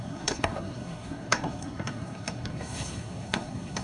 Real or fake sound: fake